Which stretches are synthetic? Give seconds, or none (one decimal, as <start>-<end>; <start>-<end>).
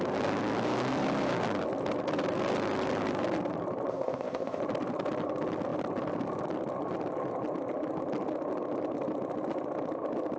3.9-4.6